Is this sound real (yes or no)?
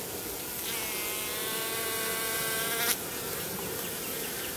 yes